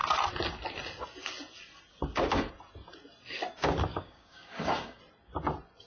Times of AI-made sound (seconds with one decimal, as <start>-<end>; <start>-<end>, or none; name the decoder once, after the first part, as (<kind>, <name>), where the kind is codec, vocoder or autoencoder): 1.9-2.5 (codec, DAC); 3.9-5.0